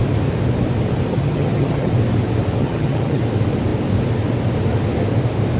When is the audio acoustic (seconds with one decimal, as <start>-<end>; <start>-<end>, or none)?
0.0-1.1; 1.9-2.6; 3.2-5.6